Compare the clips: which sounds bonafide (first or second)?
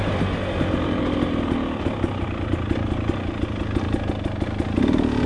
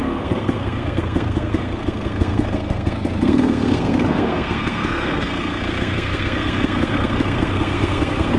first